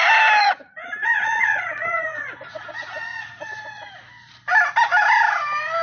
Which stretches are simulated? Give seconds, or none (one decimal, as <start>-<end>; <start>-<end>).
0.4-3.9